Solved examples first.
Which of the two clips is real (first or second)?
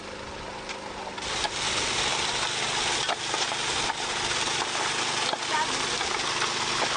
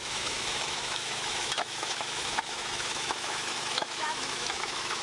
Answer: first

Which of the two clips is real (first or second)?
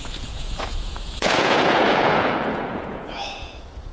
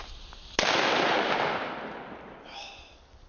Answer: second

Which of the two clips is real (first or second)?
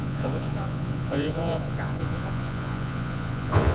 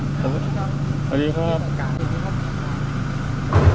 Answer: second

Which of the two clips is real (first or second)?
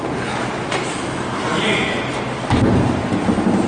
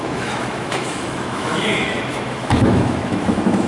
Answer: first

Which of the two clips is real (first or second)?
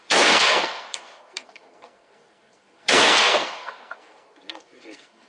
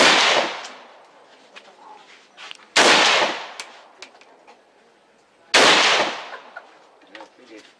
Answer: second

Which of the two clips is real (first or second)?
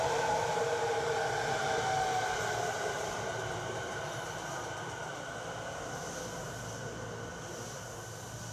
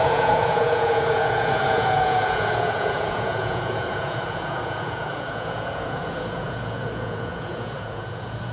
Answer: first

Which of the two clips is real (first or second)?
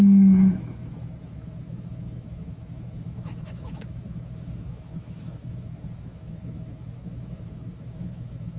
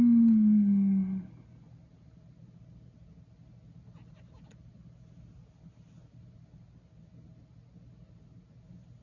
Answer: second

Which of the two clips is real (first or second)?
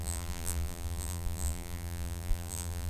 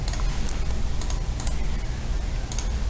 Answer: second